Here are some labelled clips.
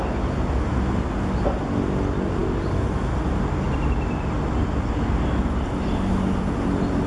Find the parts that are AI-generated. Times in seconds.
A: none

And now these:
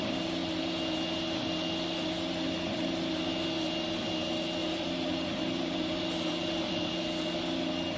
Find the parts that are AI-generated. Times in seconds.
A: 4.6-6.9 (vocoder, BigVGAN v2)

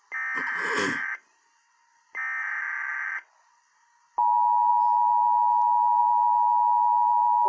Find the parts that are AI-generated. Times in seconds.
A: none

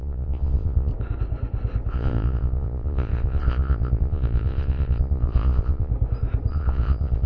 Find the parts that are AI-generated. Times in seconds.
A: 0.0-0.9 (vocoder, Vocos); 1.9-5.9; 6.5-7.3